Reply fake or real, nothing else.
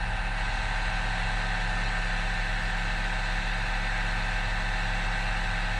real